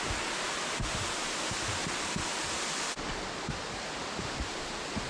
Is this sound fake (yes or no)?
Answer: no